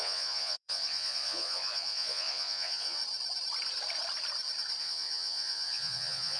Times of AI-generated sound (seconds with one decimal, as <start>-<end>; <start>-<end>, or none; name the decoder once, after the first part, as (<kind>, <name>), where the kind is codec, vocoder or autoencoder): 0.0-3.0 (vocoder, Vocos); 4.8-6.4